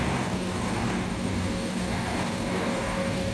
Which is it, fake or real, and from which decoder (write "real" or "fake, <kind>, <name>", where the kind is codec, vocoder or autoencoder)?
fake, codec, DAC